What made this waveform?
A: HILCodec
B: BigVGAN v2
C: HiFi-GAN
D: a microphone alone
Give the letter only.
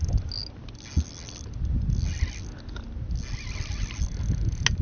D